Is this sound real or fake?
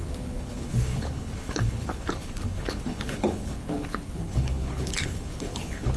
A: fake